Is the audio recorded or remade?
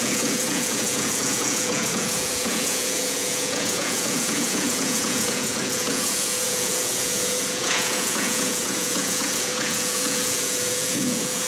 remade